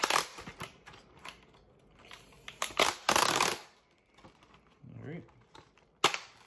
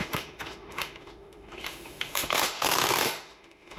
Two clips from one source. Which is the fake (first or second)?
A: second